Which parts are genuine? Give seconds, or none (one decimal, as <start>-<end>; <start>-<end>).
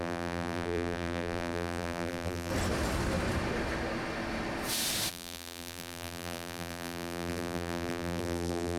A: 2.5-5.1